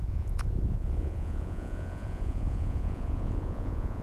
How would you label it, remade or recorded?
remade